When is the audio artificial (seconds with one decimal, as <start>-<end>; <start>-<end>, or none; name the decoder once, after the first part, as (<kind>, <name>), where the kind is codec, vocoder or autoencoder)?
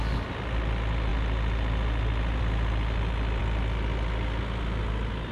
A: none